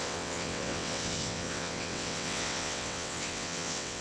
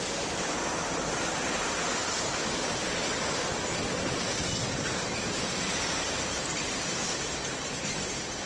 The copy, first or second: first